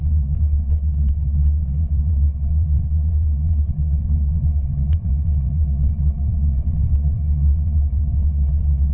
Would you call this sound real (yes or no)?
no